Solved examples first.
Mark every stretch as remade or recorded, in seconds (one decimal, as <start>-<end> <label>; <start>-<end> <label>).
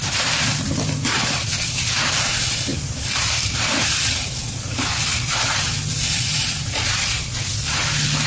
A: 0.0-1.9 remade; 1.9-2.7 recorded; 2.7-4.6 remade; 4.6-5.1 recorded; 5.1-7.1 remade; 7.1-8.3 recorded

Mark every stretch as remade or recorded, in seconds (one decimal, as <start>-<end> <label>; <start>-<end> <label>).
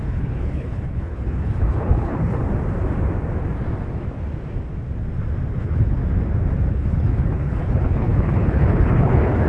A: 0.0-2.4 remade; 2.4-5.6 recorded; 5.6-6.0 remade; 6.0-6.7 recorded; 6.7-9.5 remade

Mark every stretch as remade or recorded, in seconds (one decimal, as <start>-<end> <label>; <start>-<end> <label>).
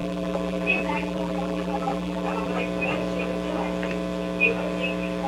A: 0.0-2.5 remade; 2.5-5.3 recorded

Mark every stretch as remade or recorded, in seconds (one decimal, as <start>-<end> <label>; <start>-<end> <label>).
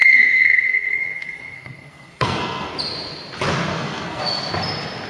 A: 0.0-2.7 remade; 2.7-3.7 recorded; 3.7-4.2 remade; 4.2-5.1 recorded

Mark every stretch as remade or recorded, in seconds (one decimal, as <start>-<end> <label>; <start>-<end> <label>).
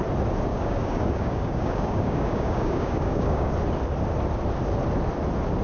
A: 0.0-0.5 recorded; 0.5-3.5 remade; 3.5-5.6 recorded